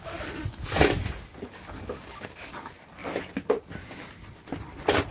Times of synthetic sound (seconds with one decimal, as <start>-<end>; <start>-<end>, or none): 0.0-3.0